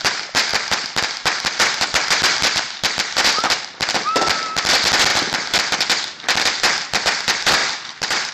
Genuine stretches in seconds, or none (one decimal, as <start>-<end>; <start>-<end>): 0.0-7.6